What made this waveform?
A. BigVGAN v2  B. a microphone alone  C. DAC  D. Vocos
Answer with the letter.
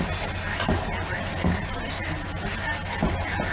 B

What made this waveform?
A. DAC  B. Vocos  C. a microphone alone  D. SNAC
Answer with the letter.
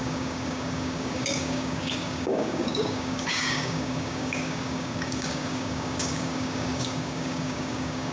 A